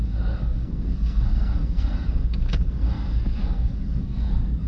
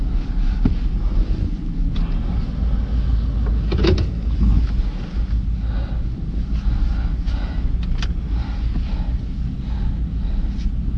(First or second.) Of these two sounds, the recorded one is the second